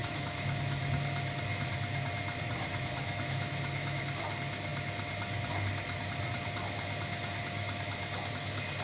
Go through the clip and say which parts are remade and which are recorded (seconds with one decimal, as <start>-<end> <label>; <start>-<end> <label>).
0.0-0.8 remade; 0.8-2.7 recorded; 2.7-4.0 remade; 4.0-8.8 recorded